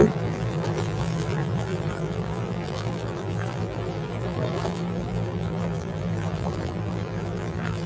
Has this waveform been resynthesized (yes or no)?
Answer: yes